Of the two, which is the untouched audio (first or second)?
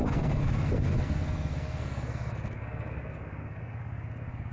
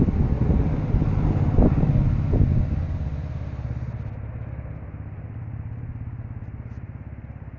second